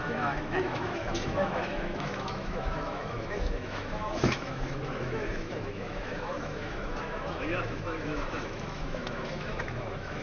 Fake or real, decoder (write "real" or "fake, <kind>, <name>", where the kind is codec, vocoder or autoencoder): fake, autoencoder, DAC-VAE